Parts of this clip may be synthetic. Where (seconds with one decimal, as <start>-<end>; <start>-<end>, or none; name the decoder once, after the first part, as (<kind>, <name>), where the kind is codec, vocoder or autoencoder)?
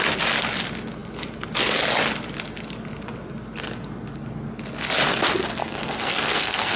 5.6-6.8 (codec, SNAC)